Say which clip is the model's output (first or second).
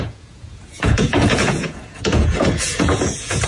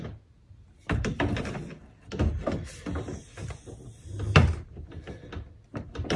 first